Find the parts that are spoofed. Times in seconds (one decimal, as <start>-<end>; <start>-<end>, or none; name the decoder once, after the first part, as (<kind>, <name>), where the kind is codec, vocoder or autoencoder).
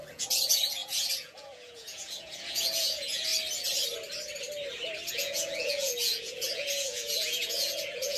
0.0-3.3 (vocoder, Vocos); 5.1-8.2